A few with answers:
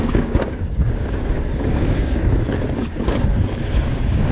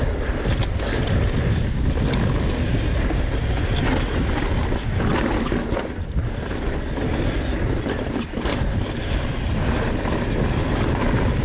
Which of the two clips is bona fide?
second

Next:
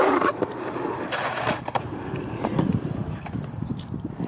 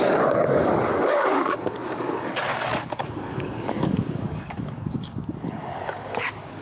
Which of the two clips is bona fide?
first